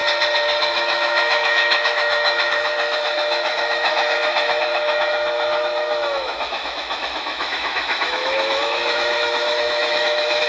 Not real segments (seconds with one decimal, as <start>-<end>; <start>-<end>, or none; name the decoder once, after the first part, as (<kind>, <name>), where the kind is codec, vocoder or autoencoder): 0.6-10.5 (autoencoder, DAC-VAE)

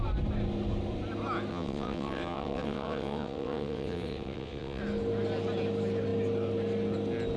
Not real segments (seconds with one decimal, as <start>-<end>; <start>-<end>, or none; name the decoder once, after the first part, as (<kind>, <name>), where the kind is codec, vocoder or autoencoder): 1.5-4.8 (vocoder, WaveNeXt)

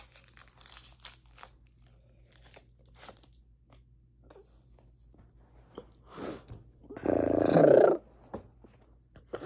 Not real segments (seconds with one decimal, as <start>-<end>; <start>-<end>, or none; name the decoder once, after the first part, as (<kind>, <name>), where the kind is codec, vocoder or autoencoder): none

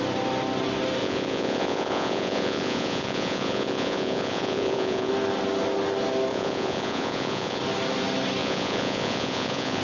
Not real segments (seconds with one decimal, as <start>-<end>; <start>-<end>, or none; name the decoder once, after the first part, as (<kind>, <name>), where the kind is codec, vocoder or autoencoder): 1.0-5.1 (vocoder, Vocos); 6.3-7.6; 8.4-9.8

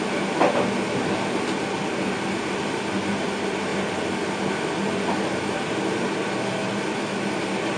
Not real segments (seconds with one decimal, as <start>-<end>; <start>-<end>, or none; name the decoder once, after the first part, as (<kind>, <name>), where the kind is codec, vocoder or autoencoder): none